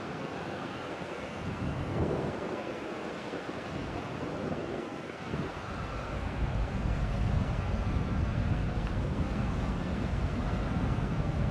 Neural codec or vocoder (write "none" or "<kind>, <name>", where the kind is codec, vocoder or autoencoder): codec, SNAC